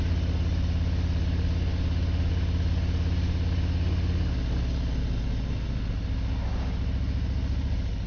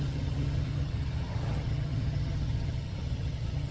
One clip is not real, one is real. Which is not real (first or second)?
second